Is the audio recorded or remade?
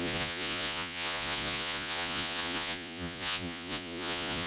remade